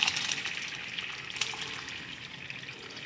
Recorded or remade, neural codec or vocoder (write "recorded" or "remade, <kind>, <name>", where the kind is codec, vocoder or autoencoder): recorded